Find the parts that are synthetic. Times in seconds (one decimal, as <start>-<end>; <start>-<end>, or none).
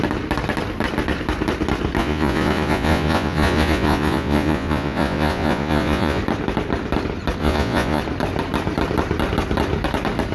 2.0-6.2; 7.4-8.0